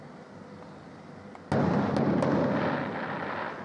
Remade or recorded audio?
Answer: recorded